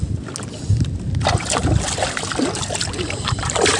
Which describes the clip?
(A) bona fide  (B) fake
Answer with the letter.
A